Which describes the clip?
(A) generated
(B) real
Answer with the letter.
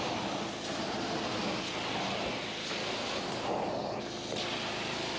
B